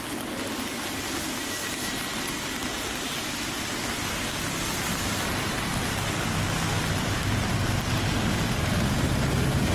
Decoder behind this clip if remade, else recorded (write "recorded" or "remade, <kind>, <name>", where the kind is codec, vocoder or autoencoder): recorded